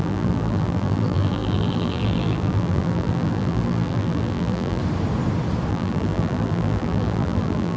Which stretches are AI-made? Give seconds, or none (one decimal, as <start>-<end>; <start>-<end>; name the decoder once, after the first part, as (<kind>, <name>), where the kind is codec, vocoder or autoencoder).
0.0-4.8 (vocoder, BigVGAN v2); 5.7-7.8